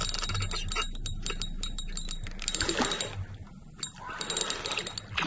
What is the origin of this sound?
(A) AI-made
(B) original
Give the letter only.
B